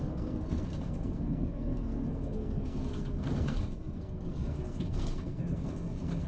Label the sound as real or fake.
fake